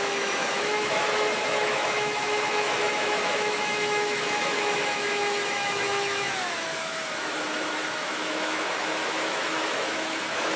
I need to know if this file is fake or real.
fake